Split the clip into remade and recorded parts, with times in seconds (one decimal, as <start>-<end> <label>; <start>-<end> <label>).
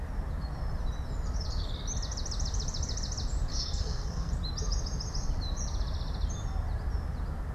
0.0-3.5 recorded; 3.5-4.3 remade; 4.3-7.5 recorded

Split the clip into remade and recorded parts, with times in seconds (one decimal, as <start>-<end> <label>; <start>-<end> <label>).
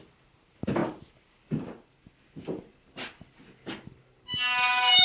0.0-5.0 recorded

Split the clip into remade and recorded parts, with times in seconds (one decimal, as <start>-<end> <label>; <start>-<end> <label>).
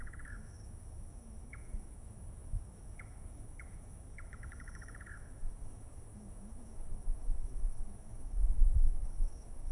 0.0-9.7 remade